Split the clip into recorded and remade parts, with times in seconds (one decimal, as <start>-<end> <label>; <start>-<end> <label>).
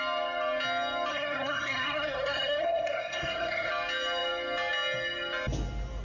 0.0-1.1 recorded; 1.1-3.7 remade; 3.7-6.0 recorded